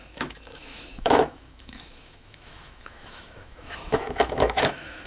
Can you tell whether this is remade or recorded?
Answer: remade